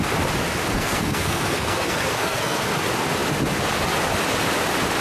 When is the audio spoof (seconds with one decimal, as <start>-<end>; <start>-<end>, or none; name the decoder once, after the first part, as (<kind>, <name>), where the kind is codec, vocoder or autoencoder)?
0.7-2.6 (codec, SNAC)